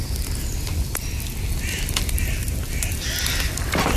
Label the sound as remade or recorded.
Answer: recorded